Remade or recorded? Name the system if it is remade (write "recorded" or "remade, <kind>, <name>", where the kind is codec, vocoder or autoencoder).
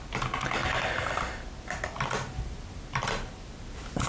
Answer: recorded